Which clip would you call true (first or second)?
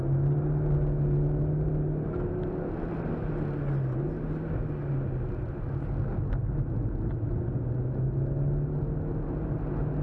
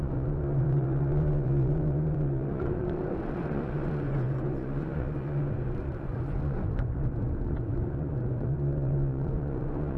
first